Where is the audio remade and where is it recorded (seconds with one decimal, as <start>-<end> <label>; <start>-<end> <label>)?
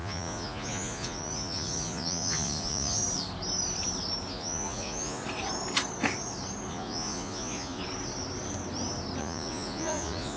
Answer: 0.0-3.0 remade; 3.0-4.3 recorded; 4.3-5.2 remade; 5.2-6.7 recorded; 6.7-7.8 remade; 7.8-9.2 recorded; 9.2-10.4 remade